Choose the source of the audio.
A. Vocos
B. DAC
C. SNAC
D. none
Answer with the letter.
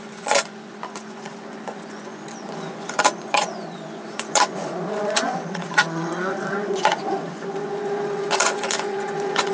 A